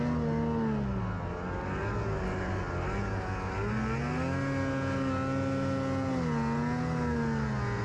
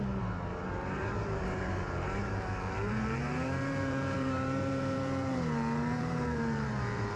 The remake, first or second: second